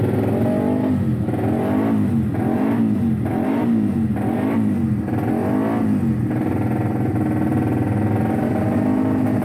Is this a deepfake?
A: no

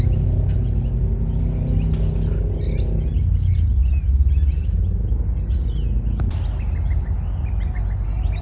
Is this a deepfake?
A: no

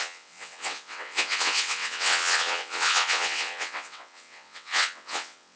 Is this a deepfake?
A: yes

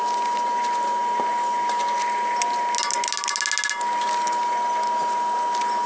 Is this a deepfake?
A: no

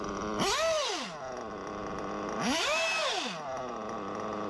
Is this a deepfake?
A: no